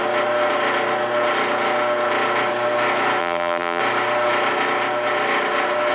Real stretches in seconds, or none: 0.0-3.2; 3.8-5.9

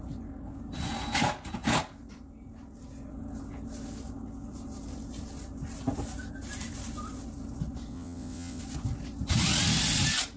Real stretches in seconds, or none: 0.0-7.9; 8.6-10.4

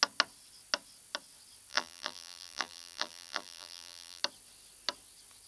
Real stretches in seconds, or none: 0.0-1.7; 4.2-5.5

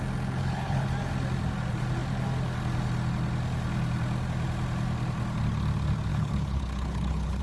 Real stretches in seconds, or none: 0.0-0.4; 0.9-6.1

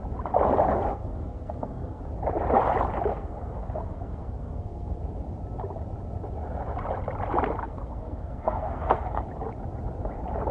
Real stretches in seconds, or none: 0.0-0.9; 2.0-3.1; 5.0-7.6; 9.2-10.5

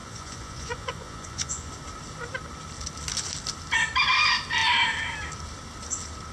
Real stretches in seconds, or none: 1.7-6.3

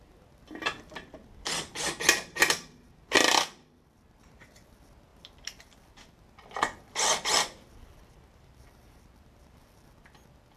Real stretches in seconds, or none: 0.0-5.1; 10.0-10.6

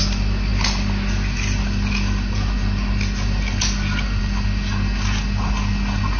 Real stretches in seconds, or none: 0.0-6.2